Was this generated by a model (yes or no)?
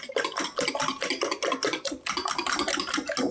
no